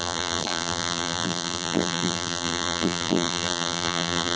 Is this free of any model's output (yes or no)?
no